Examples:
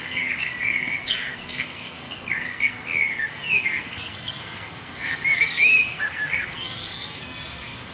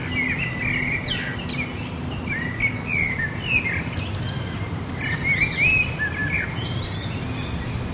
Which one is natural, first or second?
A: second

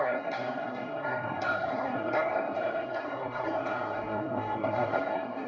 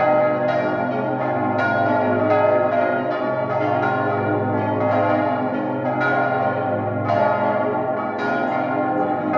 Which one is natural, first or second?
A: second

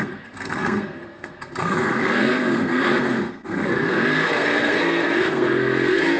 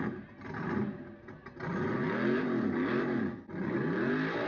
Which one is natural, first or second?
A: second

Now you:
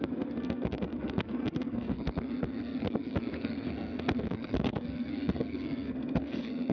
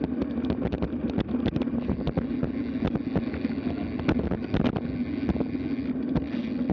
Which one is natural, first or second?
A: second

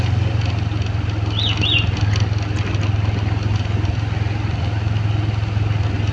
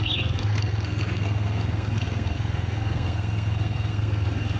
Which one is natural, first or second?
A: first